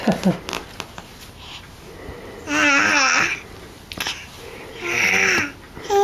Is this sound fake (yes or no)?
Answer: no